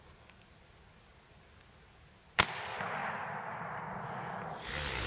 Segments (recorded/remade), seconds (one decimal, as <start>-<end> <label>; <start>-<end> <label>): 0.0-5.1 recorded